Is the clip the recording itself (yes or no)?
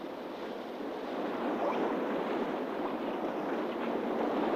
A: no